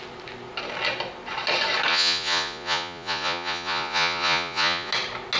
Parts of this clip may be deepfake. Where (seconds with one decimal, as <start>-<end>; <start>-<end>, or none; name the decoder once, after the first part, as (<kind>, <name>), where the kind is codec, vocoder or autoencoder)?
1.9-4.9 (vocoder, Vocos)